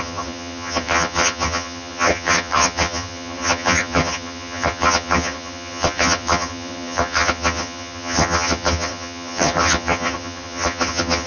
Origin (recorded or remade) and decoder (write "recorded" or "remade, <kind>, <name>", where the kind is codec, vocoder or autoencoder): remade, vocoder, HiFi-GAN